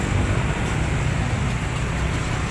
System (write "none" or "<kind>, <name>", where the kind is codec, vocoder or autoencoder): none